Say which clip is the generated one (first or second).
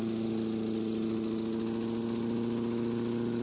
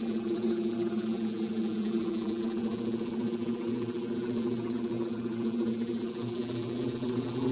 second